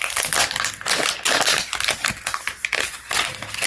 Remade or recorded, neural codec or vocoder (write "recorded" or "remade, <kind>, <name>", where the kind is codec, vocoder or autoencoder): recorded